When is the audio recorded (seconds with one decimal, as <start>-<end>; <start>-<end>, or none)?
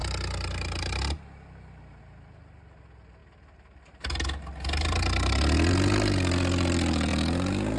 0.0-7.8